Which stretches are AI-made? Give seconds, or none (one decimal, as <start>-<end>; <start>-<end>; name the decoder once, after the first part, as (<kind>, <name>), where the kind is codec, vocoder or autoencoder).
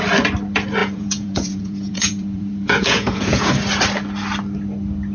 0.8-3.5 (vocoder, Vocos)